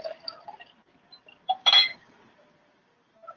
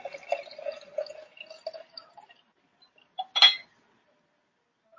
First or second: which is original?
second